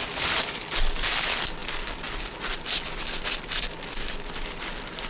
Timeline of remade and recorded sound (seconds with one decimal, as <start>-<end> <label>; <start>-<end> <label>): 0.0-5.1 recorded